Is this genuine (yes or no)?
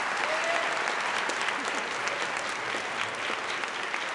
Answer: yes